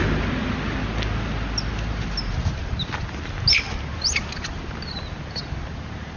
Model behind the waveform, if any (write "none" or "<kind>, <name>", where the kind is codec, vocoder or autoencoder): none